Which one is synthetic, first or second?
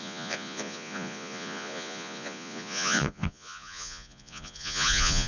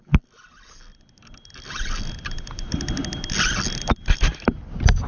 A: first